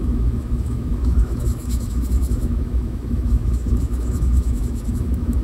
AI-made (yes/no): yes